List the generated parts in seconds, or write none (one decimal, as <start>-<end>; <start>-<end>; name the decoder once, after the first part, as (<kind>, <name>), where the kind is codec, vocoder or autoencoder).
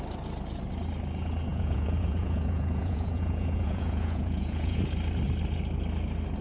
1.5-4.8 (vocoder, Vocos)